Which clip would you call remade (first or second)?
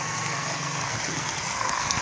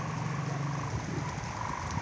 first